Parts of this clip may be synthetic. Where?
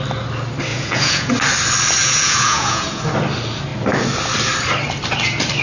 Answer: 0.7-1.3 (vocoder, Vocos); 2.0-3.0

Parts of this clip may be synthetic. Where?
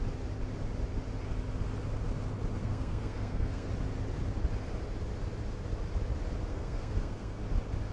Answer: 2.6-3.7 (codec, SNAC); 6.5-7.4